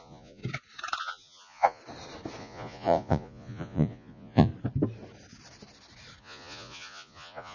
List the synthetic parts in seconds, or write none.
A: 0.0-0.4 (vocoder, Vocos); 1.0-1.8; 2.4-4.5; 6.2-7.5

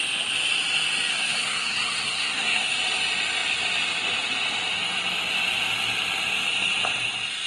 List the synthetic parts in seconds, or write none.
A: 1.1-2.7 (codec, SNAC)